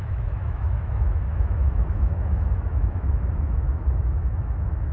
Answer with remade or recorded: remade